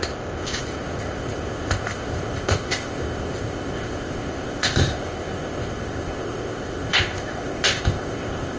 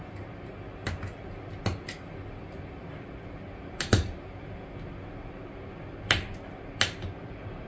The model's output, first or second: first